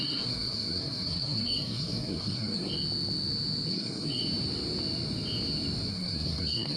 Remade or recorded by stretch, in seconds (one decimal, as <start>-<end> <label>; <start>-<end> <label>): 0.0-2.7 remade; 2.7-3.7 recorded; 3.7-4.2 remade; 4.2-5.9 recorded; 5.9-6.8 remade